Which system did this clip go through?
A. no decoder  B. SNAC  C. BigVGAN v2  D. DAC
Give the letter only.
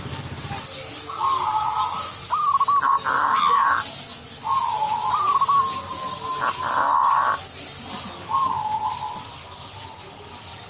A